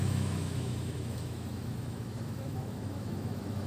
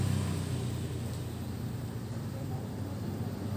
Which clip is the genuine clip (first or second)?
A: second